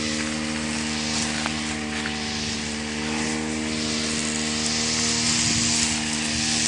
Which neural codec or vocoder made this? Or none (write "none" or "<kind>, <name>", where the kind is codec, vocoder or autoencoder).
none